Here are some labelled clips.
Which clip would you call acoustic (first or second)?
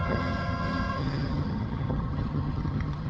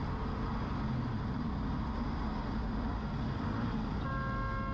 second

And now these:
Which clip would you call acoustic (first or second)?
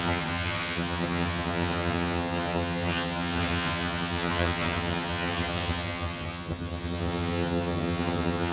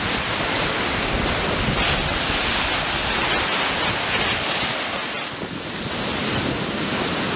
second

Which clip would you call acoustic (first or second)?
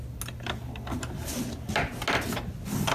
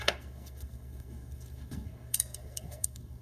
first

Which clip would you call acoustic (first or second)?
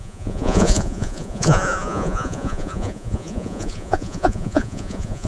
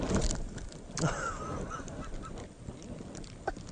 second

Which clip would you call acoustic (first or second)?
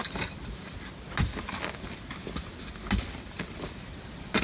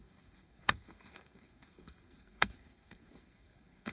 first